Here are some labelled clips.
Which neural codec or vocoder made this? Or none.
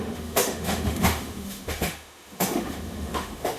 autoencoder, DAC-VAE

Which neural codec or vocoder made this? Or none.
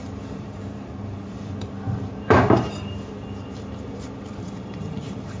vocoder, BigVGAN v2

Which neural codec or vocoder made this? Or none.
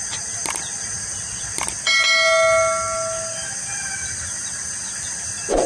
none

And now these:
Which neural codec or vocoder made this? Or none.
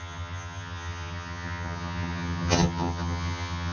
vocoder, HiFi-GAN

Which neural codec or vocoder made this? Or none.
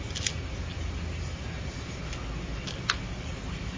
none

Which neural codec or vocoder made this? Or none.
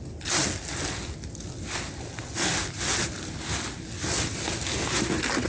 none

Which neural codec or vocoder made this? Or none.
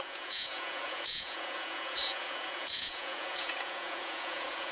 vocoder, Vocos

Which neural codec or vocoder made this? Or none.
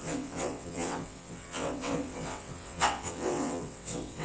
vocoder, WaveNeXt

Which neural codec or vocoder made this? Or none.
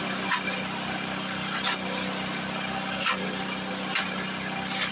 none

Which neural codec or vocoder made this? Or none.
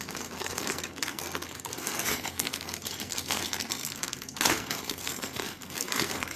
codec, SNAC